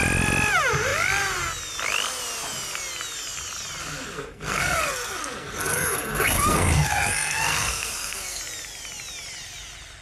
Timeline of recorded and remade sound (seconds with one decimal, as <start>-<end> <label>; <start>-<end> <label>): 0.0-3.8 recorded; 3.8-8.4 remade; 8.4-10.0 recorded